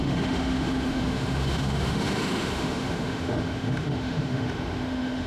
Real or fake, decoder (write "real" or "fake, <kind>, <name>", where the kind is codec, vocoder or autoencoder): fake, autoencoder, DAC-VAE